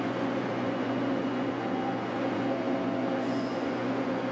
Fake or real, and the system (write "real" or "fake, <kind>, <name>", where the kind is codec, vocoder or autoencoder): fake, vocoder, Vocos